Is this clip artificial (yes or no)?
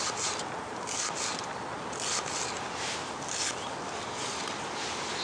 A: no